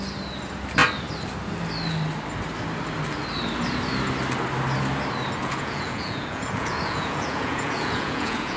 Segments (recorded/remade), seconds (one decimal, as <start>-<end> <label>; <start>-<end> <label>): 0.0-5.4 recorded; 5.4-8.6 remade